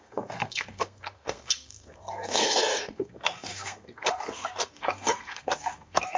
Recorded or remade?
remade